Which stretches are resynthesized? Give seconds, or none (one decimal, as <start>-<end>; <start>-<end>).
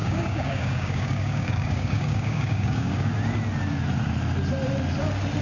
0.0-3.1